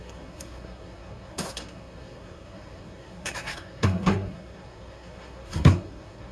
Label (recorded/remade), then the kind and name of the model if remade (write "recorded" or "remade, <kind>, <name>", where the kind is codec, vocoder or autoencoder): remade, codec, SNAC